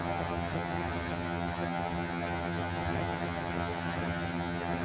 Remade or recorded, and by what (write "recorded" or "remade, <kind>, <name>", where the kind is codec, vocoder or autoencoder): remade, vocoder, HiFi-GAN